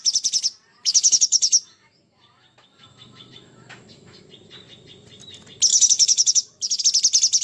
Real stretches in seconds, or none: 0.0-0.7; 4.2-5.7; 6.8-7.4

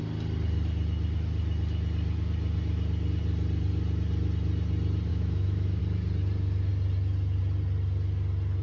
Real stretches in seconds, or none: 0.0-5.1; 5.8-8.6

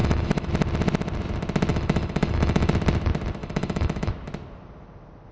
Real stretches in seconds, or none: 0.5-1.7; 2.7-3.4; 4.1-5.3